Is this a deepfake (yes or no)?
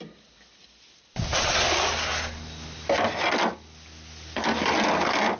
no